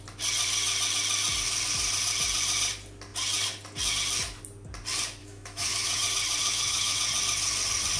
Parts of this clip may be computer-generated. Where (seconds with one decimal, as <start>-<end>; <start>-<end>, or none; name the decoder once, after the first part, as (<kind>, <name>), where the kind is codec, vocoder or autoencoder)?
5.2-6.0 (autoencoder, DAC-VAE); 6.4-7.0